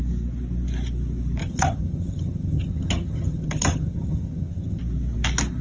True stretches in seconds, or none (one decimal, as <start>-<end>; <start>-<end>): 0.0-1.4; 4.8-5.6